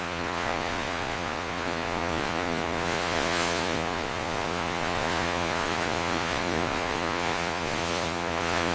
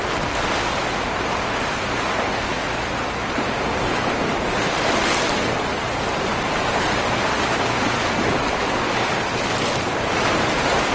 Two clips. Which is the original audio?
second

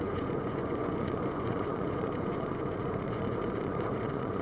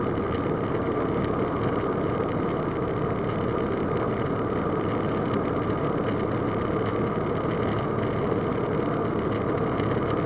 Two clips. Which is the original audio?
second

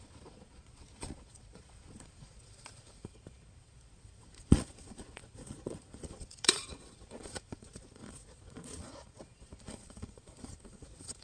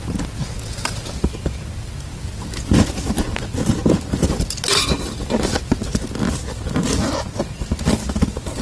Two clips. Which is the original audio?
second